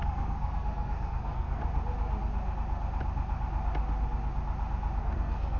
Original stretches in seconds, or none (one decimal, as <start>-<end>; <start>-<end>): 1.6-5.0

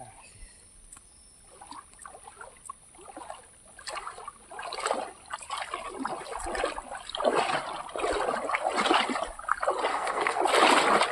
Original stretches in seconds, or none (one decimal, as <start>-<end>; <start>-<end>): 0.0-9.9; 10.4-11.1

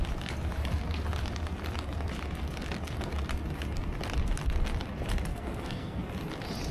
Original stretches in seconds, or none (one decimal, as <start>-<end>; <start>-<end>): 0.0-5.3; 6.1-6.7

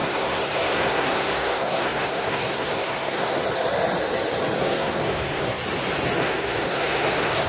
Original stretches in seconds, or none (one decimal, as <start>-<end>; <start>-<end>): 3.4-4.6; 5.6-6.2

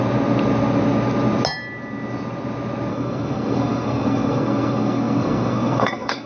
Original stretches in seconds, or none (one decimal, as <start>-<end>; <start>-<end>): 0.0-2.9

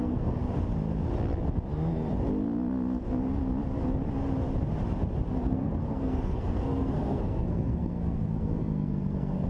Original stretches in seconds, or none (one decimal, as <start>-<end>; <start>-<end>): 0.4-5.4

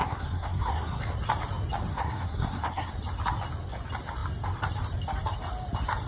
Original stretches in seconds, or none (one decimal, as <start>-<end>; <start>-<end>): 1.0-1.9; 2.9-6.1

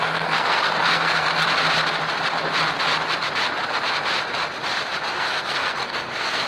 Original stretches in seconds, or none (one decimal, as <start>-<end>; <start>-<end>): 1.3-5.1